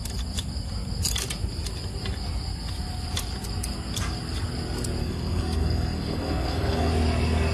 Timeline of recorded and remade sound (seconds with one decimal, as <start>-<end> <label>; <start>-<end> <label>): 0.0-5.0 recorded; 5.0-6.9 remade; 6.9-7.5 recorded